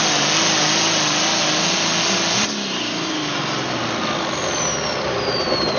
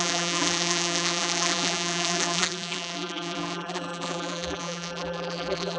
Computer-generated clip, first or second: second